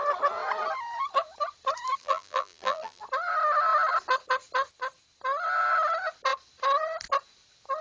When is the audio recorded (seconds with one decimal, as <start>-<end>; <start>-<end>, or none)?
0.0-2.0; 3.0-7.8